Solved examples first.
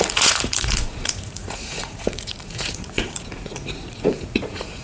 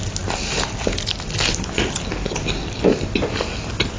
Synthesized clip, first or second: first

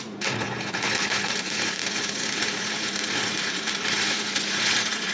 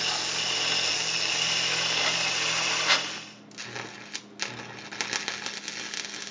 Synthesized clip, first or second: first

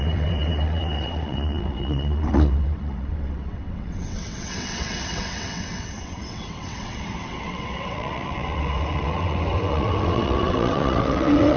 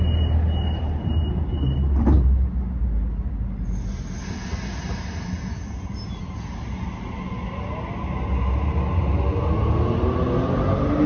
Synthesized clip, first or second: first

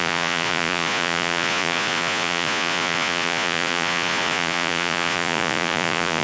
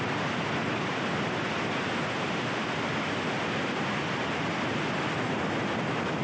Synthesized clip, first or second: first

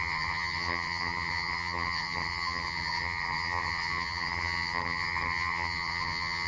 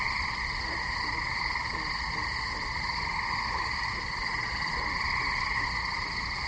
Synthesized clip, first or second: first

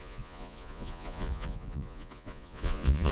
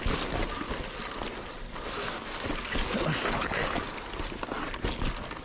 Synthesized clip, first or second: first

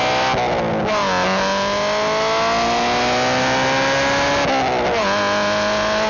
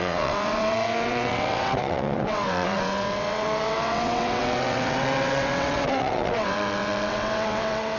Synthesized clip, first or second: second